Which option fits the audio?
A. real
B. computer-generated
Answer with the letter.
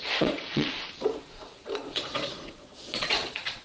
B